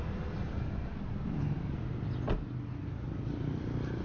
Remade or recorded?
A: recorded